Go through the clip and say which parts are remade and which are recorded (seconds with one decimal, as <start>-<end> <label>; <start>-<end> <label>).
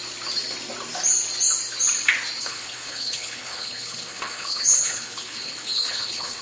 0.0-2.4 recorded; 2.4-6.4 remade